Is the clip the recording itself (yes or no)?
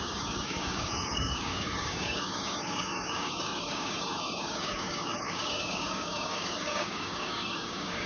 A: no